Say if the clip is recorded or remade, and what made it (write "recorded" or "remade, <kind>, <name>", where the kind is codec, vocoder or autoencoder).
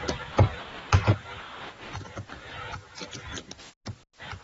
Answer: recorded